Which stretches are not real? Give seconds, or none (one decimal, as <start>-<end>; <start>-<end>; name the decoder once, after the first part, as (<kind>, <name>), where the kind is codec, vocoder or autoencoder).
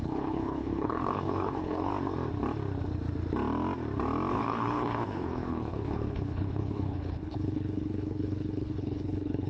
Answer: 0.0-1.9 (codec, HILCodec); 4.3-9.5